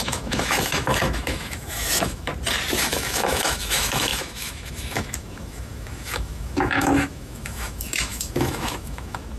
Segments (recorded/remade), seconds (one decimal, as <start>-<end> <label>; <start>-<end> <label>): 0.0-2.3 remade; 2.3-2.8 recorded; 2.8-9.4 remade